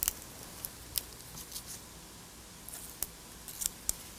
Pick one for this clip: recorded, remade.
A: recorded